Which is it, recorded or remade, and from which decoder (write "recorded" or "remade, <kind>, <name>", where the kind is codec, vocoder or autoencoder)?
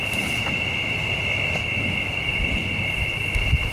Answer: recorded